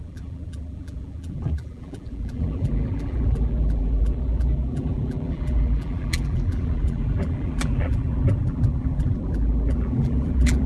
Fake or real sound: fake